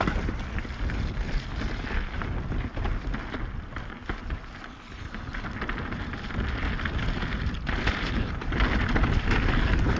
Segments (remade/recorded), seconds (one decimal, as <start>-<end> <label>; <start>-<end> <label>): 0.0-10.0 recorded